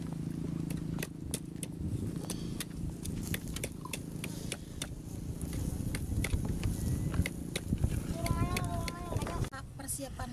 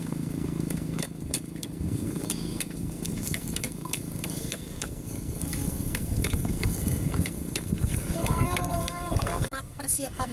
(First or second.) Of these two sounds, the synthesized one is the second